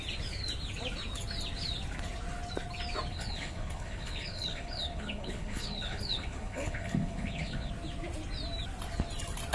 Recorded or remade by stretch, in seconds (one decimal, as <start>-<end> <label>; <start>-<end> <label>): 0.0-3.1 recorded; 3.1-7.7 remade; 7.7-9.5 recorded